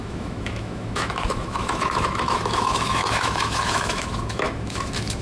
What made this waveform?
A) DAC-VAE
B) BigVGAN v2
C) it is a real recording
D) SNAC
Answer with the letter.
A